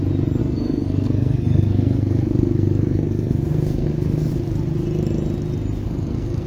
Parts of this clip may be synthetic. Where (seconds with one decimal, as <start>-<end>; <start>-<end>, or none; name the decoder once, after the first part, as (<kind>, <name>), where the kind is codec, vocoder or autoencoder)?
0.4-4.3 (codec, SNAC); 5.8-6.5